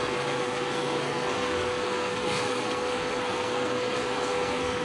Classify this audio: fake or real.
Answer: fake